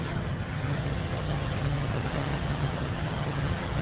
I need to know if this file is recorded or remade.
remade